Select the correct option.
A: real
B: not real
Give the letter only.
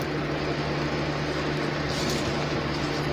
A